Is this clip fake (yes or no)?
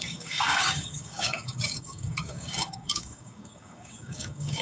yes